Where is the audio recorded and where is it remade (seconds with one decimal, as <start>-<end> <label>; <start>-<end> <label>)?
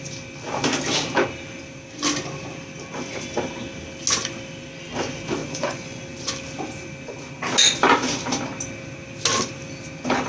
0.0-5.4 recorded; 5.4-6.0 remade; 6.0-10.3 recorded